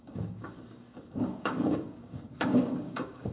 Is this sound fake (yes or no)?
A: yes